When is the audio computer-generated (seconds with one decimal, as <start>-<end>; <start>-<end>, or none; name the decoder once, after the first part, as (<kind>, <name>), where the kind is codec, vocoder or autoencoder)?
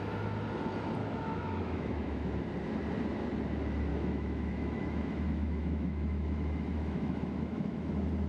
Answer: 1.0-2.3 (autoencoder, DAC-VAE); 3.9-7.9